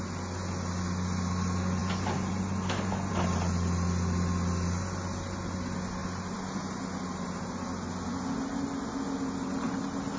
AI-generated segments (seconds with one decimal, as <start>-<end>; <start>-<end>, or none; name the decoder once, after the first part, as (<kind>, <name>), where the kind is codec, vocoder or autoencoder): none